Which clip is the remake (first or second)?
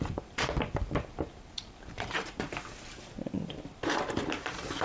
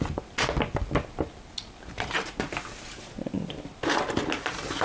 first